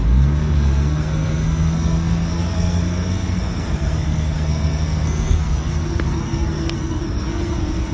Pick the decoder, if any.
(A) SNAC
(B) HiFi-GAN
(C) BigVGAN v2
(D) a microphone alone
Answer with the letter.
A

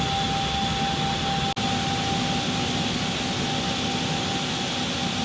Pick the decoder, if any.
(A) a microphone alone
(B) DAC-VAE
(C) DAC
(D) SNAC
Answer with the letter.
A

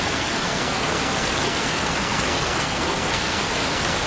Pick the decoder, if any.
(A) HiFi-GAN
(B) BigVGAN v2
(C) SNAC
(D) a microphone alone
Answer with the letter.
C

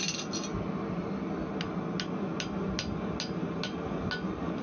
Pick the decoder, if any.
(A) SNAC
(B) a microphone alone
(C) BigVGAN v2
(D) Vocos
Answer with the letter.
B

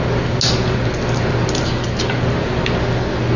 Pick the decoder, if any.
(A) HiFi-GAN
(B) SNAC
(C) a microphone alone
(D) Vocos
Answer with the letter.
C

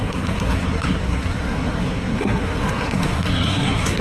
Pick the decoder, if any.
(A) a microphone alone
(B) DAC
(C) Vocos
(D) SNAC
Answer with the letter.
D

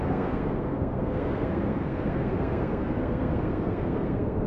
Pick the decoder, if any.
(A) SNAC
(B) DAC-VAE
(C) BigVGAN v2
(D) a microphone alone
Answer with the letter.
A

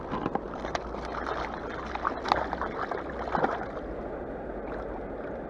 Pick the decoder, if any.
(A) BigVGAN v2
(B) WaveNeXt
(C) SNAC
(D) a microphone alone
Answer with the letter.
D